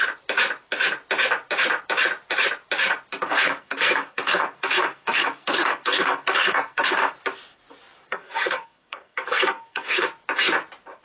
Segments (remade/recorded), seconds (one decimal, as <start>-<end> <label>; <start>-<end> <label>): 0.0-3.3 recorded; 3.3-7.1 remade; 7.1-8.1 recorded; 8.1-10.1 remade; 10.1-11.0 recorded